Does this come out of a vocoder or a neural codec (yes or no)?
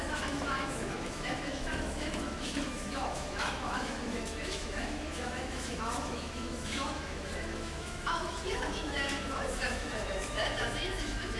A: yes